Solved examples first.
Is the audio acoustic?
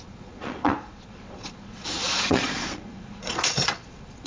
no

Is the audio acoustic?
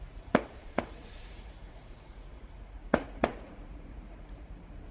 no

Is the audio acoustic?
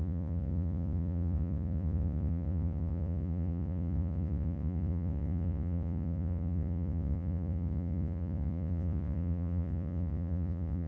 no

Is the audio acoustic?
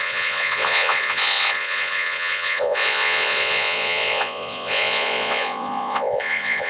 no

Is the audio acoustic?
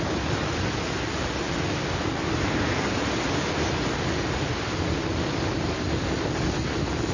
yes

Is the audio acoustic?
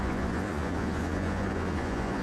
no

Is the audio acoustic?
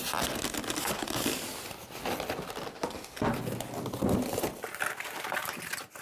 yes